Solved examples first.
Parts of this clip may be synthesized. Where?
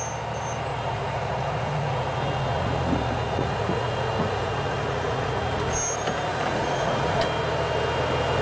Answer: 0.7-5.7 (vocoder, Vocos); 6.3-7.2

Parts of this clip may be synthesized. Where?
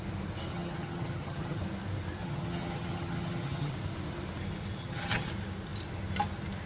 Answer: 0.5-1.6 (vocoder, HiFi-GAN); 2.2-3.7; 4.8-5.3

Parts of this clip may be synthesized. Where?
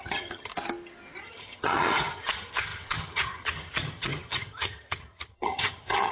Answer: 0.0-0.5 (vocoder, HiFi-GAN); 1.2-6.1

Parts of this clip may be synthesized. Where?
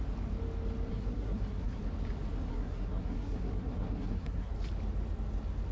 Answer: 0.9-1.8 (codec, SNAC); 2.5-4.5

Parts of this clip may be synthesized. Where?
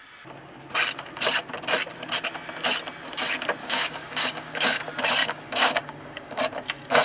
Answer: 3.6-4.8 (codec, DAC); 5.2-6.4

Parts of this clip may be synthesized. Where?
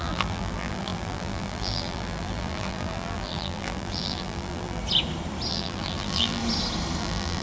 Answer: 0.0-4.8 (vocoder, BigVGAN v2); 5.5-6.4; 7.0-7.4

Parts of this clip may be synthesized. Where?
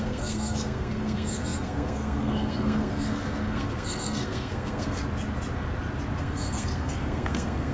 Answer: 0.0-5.0 (codec, SNAC); 6.2-7.7